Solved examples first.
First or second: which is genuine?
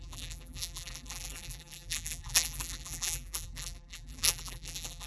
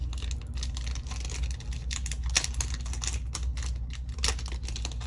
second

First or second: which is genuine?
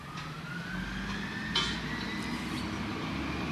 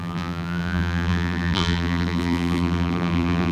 first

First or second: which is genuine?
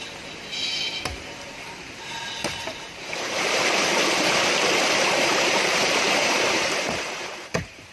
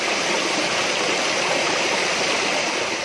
second